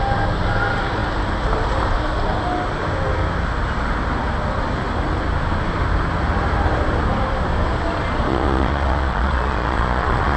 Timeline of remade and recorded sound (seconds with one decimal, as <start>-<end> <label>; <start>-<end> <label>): 0.0-8.3 recorded; 8.3-10.4 remade